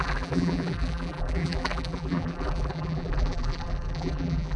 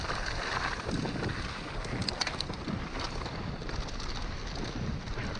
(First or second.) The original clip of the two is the second